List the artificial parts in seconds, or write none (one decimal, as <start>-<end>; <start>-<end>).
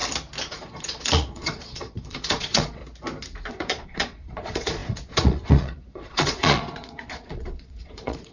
0.5-2.8; 3.5-8.3